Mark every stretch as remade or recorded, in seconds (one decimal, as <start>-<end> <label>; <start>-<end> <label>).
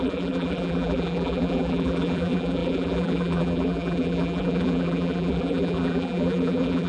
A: 0.0-6.9 remade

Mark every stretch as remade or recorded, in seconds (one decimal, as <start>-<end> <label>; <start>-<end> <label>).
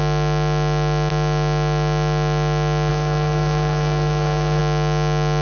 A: 0.0-2.9 recorded; 2.9-4.6 remade; 4.6-5.4 recorded